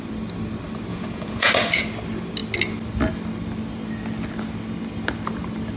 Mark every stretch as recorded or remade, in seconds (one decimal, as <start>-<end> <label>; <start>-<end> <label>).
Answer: 0.0-0.9 recorded; 0.9-1.5 remade; 1.5-5.8 recorded

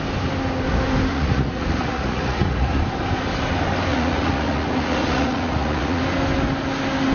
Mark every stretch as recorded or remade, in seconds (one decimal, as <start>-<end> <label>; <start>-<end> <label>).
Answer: 0.0-1.1 recorded; 1.1-2.8 remade; 2.8-3.9 recorded; 3.9-6.0 remade; 6.0-7.1 recorded

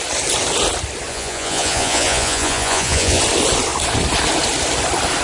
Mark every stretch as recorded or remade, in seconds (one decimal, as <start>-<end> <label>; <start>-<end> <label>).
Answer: 0.0-1.1 recorded; 1.1-3.2 remade; 3.2-5.2 recorded

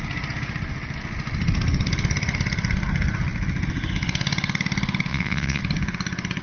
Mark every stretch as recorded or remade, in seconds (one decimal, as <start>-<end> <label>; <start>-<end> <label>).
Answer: 0.0-5.1 recorded; 5.1-5.6 remade; 5.6-6.4 recorded

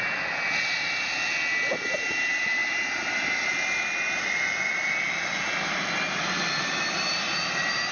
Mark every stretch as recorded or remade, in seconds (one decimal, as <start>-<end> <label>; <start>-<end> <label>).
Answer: 0.0-7.9 recorded